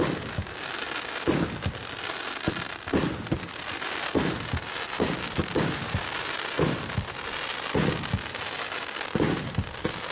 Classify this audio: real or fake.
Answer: real